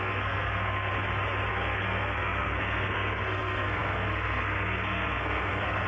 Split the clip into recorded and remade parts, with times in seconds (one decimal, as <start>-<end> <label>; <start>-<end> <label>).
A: 0.0-0.9 remade; 0.9-1.5 recorded; 1.5-5.9 remade